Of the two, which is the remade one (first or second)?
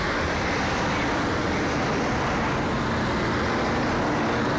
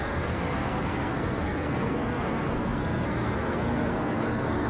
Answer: second